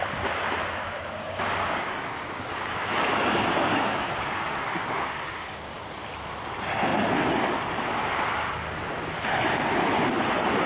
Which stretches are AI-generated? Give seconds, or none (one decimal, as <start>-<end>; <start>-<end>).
0.8-5.8